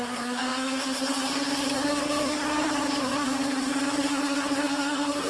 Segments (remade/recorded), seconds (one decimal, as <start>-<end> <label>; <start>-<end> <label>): 0.0-5.3 remade

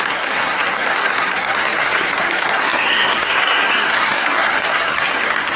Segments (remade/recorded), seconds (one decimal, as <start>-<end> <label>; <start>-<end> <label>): 0.0-5.6 remade